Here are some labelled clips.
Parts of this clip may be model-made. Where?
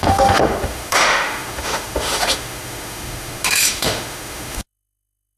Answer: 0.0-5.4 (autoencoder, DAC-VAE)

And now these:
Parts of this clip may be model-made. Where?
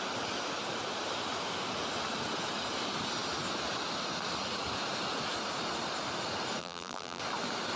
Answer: 6.6-7.2 (vocoder, BigVGAN v2)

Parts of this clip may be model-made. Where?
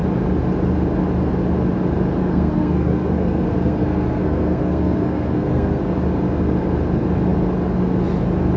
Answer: 2.2-5.8 (codec, SNAC)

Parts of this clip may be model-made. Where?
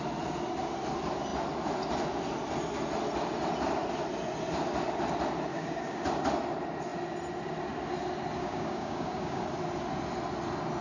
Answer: 5.5-6.0 (codec, DAC); 8.4-9.4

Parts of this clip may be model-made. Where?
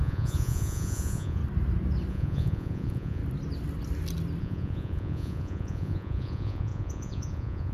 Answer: 0.0-1.4 (vocoder, Vocos); 2.1-3.2; 4.4-7.7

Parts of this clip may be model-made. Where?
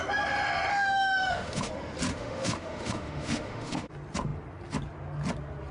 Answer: 0.7-1.7 (autoencoder, DAC-VAE); 2.1-3.9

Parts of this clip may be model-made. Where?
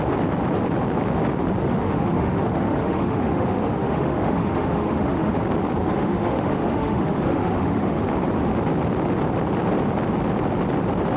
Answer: 1.6-5.3 (autoencoder, DAC-VAE); 5.8-8.0